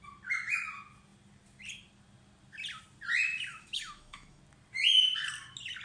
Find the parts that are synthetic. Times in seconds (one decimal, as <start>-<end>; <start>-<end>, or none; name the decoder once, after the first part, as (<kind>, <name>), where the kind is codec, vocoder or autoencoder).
3.5-4.4 (autoencoder, DAC-VAE)